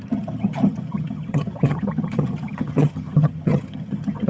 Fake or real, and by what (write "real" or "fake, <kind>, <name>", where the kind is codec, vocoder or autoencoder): fake, vocoder, HiFi-GAN